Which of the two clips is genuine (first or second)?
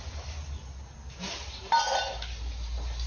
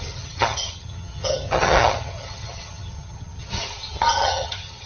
first